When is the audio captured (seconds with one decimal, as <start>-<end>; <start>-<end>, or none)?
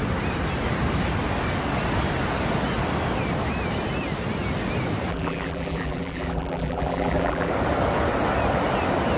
0.0-5.1; 7.5-9.2